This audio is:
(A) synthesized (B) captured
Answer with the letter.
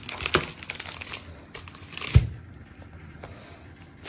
B